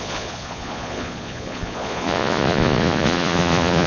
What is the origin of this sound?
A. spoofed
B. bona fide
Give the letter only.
A